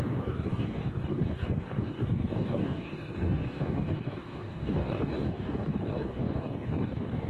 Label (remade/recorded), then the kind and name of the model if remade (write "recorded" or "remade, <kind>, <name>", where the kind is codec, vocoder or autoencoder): remade, codec, DAC